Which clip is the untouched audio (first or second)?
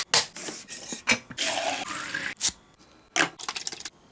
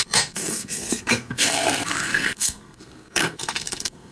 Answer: first